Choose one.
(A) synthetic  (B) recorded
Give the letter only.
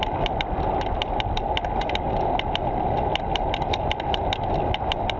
B